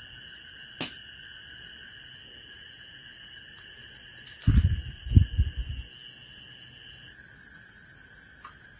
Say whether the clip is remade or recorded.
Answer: recorded